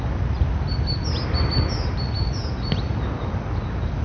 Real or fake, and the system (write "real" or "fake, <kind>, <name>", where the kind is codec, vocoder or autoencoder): real